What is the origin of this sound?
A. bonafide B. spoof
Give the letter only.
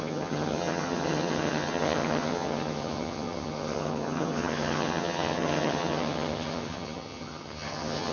B